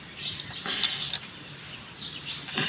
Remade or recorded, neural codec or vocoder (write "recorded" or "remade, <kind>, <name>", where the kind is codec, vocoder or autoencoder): remade, vocoder, BigVGAN v2